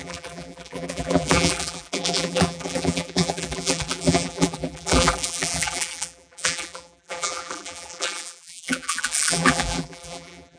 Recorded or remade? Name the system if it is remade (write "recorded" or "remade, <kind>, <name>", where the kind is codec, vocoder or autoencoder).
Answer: remade, vocoder, BigVGAN v2